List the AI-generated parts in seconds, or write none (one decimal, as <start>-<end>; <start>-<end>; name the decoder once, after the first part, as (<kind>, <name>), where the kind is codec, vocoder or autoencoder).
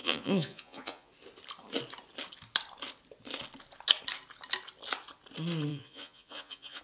0.0-1.1 (vocoder, Vocos); 5.7-6.8